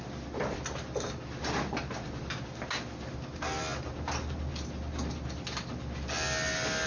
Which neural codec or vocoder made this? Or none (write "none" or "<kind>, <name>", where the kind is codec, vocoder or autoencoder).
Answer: none